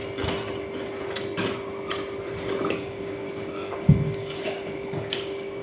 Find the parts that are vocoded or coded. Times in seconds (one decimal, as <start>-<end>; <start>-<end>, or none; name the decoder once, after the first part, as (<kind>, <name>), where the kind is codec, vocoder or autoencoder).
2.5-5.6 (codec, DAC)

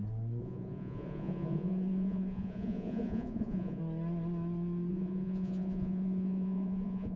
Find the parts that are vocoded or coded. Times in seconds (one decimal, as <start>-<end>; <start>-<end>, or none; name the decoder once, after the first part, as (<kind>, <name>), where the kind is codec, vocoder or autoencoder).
0.4-3.8 (vocoder, Vocos); 4.9-7.2

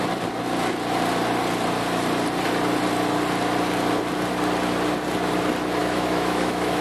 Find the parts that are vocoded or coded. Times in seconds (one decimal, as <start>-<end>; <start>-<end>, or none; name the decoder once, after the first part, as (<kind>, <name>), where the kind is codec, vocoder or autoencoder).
5.8-6.8 (autoencoder, DAC-VAE)